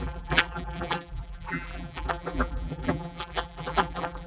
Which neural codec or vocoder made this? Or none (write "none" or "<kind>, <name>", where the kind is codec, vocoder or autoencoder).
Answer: vocoder, BigVGAN v2